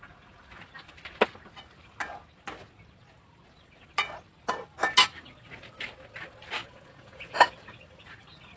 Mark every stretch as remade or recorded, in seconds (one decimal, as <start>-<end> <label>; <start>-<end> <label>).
0.0-6.6 recorded; 6.6-7.5 remade; 7.5-8.6 recorded